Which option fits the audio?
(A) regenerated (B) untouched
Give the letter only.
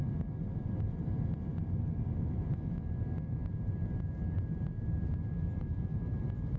A